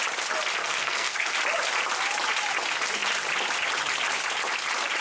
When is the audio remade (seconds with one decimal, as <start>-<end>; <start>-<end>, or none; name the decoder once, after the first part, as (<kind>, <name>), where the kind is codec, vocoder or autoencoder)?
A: 0.6-1.3 (codec, SNAC)